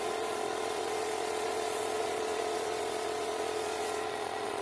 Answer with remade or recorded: remade